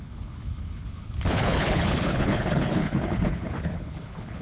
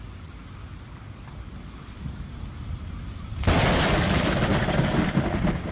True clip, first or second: second